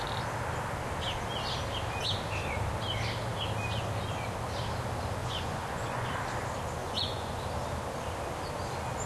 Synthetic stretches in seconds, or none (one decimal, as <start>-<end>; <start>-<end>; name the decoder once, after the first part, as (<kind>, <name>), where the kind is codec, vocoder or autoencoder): 5.2-6.1 (vocoder, Vocos); 6.8-7.4